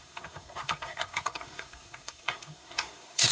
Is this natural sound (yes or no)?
no